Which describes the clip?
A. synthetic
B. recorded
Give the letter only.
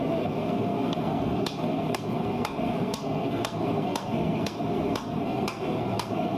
A